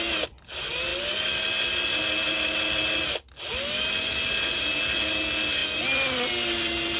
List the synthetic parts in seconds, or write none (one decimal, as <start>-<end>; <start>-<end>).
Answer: none